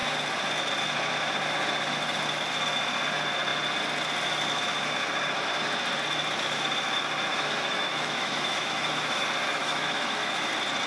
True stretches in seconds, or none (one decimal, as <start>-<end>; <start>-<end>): 0.0-7.3; 9.2-9.6; 10.5-10.9